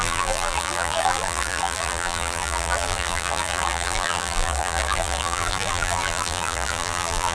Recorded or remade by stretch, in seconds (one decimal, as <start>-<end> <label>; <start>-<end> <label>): 0.0-7.3 remade